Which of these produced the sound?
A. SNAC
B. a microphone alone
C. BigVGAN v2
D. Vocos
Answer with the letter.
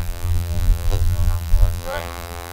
C